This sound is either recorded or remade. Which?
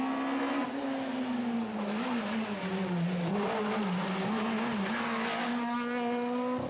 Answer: recorded